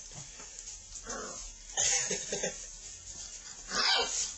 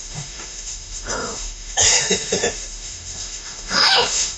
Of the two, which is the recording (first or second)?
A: first